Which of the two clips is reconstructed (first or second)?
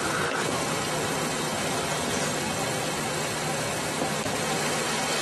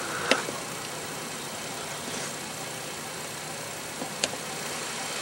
second